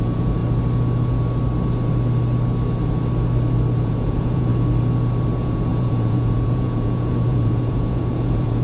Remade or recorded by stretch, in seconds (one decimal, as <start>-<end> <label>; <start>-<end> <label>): 0.0-0.4 remade; 0.4-3.8 recorded; 3.8-4.5 remade; 4.5-5.3 recorded; 5.3-8.6 remade